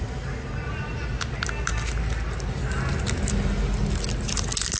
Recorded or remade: recorded